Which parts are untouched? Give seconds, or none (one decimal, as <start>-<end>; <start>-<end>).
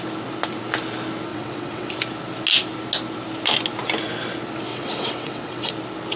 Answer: 0.0-1.3; 1.9-4.7; 5.7-6.2